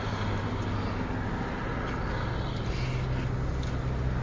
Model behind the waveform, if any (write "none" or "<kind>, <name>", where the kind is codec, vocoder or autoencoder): none